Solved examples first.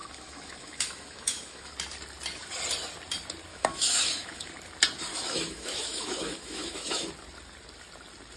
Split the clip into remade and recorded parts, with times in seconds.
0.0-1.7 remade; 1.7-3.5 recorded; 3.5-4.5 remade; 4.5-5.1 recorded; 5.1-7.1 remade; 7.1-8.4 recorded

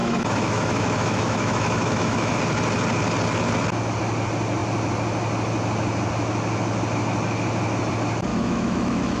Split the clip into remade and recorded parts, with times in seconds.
0.0-2.4 remade; 2.4-8.3 recorded; 8.3-9.2 remade